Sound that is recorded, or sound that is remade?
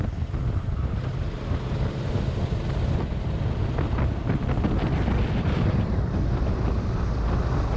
recorded